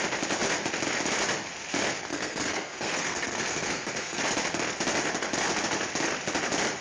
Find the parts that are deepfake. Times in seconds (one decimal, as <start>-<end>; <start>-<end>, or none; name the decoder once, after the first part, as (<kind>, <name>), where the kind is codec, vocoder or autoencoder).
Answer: 2.1-4.2 (codec, SNAC)